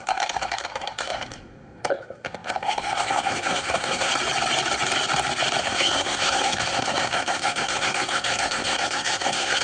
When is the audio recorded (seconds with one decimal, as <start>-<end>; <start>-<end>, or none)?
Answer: 4.1-5.6